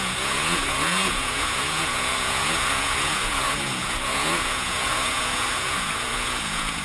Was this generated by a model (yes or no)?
yes